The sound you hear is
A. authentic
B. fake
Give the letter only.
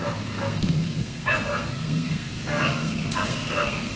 B